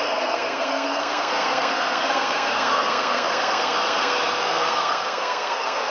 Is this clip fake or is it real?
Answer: fake